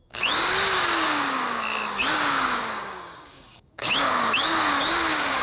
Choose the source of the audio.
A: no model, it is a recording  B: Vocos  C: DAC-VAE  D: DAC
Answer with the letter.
D